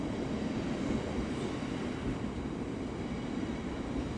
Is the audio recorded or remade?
recorded